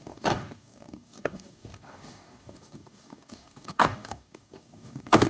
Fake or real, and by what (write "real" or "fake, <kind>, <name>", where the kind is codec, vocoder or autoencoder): fake, codec, DAC